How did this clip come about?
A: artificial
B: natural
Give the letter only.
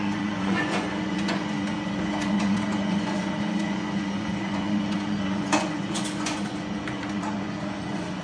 A